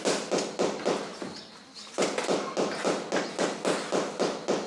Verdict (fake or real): real